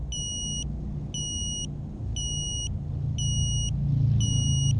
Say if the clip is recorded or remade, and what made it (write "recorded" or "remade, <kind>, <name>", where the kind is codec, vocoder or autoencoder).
recorded